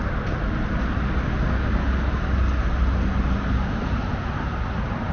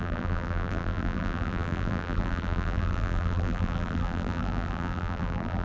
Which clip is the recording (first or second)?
first